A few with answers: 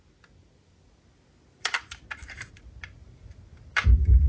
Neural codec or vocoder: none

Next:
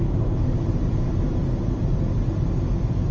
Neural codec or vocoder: none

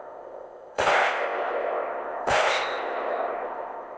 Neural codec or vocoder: codec, ZipCodec